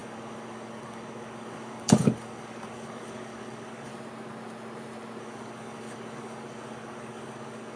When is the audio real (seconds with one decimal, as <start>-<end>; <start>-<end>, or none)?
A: 3.9-5.2